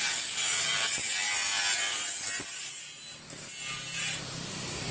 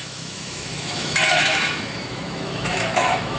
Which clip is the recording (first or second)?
first